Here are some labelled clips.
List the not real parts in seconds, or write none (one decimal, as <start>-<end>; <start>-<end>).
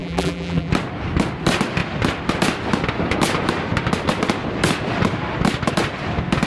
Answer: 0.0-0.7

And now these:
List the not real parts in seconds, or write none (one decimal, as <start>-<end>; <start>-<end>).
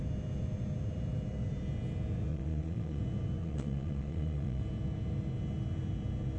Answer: 2.3-3.0; 3.4-4.6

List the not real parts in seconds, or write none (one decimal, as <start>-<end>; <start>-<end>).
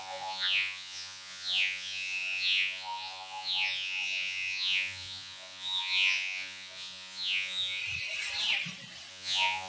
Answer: 0.0-7.8; 9.1-9.7